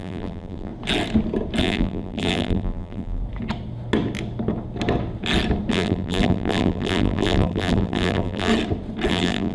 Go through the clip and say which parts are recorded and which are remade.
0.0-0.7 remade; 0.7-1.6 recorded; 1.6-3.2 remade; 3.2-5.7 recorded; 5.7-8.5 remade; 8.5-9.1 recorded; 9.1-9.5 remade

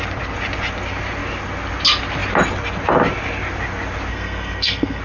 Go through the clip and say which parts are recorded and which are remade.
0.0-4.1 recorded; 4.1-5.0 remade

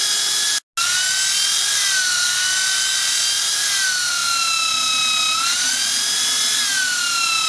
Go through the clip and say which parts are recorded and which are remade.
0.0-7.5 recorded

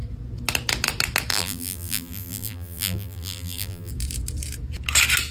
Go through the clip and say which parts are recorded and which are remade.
0.0-1.3 recorded; 1.3-3.9 remade; 3.9-5.3 recorded

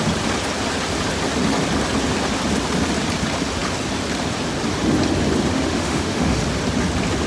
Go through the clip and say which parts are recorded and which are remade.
0.0-5.5 recorded; 5.5-6.4 remade; 6.4-7.3 recorded

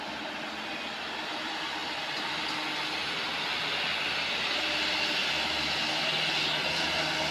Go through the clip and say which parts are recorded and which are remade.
0.0-7.3 recorded

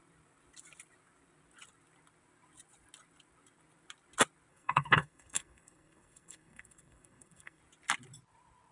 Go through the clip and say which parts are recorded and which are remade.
0.0-4.5 recorded; 4.5-7.6 remade; 7.6-8.7 recorded

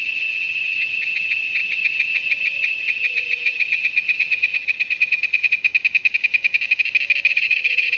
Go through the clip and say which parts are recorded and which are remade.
0.0-5.6 remade; 5.6-7.3 recorded; 7.3-8.0 remade